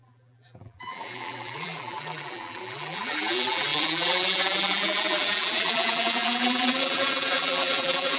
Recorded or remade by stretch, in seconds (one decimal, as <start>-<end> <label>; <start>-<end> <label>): 0.0-8.2 remade